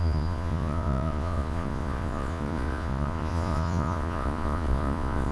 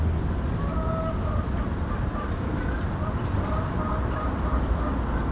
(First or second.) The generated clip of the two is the first